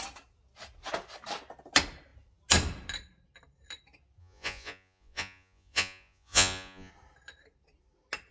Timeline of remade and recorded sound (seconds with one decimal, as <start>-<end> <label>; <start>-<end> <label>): 0.0-4.2 recorded; 4.2-6.9 remade; 6.9-8.3 recorded